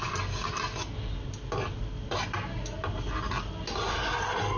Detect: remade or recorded recorded